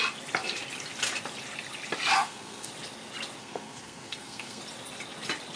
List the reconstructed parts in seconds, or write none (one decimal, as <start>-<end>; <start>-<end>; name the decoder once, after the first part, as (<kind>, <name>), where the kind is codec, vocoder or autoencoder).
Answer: 2.1-2.7 (codec, SNAC); 3.4-4.6